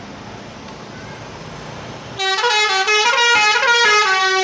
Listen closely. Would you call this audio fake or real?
real